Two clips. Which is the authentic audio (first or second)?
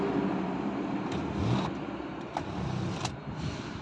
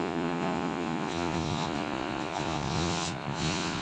first